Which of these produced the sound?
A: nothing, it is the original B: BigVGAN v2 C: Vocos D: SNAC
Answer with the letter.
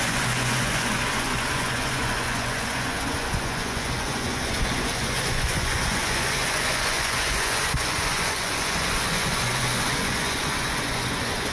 C